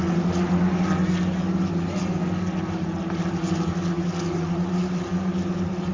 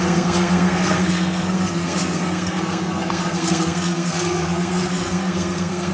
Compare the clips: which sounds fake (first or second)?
second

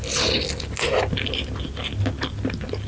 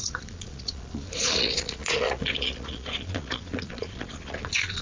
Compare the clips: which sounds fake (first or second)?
second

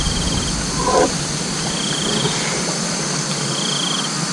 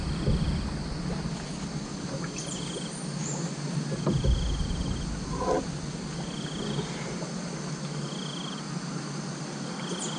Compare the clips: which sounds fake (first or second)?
first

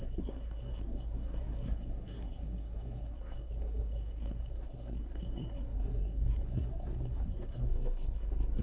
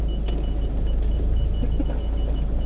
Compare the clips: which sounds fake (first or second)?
first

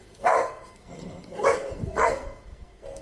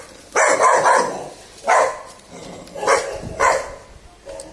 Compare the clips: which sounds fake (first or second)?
first